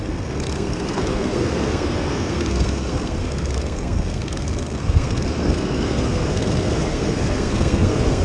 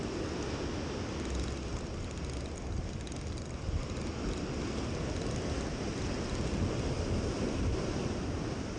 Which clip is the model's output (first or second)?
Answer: first